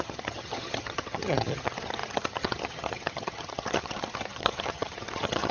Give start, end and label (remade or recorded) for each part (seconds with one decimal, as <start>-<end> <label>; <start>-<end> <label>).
0.0-5.5 remade